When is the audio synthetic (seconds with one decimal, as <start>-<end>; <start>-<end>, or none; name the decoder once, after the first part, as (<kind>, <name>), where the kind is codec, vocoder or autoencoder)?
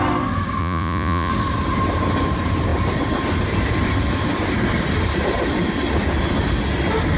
0.6-1.3 (vocoder, Vocos)